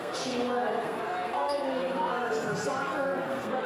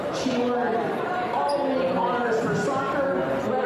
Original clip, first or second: second